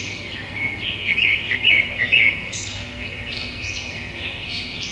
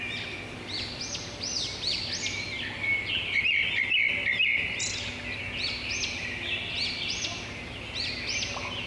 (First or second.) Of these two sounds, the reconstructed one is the first